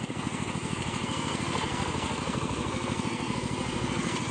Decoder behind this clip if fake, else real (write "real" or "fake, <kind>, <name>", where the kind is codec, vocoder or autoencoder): fake, codec, SNAC